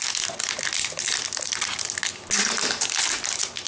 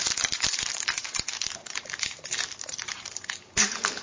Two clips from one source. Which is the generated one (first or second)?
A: second